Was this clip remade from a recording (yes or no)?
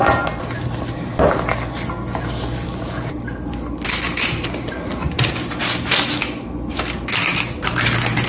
no